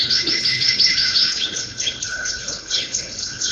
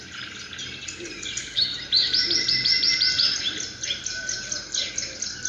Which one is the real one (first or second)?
second